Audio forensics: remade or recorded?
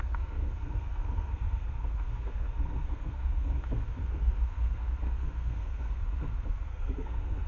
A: remade